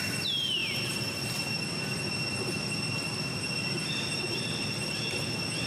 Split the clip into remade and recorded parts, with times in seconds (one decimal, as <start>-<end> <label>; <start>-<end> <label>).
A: 0.0-5.7 recorded